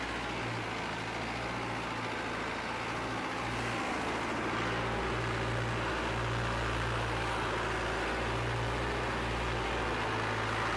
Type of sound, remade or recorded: recorded